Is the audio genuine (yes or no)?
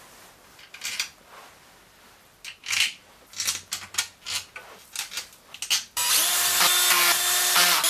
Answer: yes